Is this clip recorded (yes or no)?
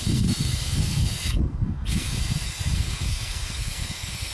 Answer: no